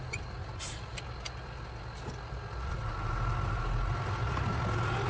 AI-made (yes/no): no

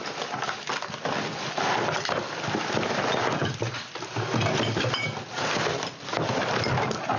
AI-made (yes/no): no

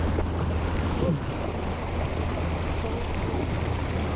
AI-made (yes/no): no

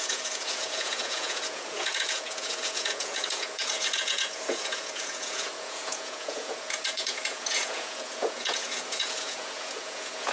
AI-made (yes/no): yes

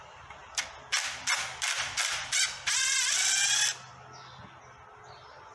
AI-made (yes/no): no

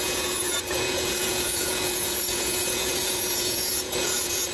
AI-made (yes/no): yes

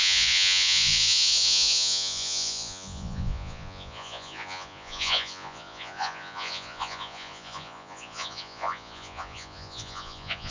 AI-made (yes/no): yes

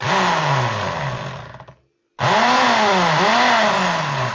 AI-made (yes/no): no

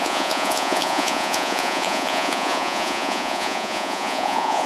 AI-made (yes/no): yes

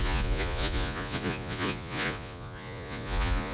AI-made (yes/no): yes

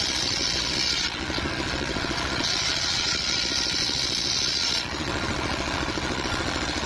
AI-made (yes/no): yes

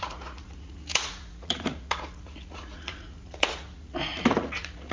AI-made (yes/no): yes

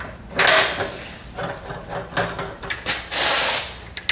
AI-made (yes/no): no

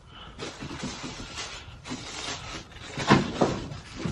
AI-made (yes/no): no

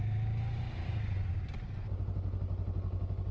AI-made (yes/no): no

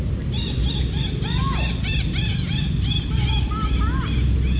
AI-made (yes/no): no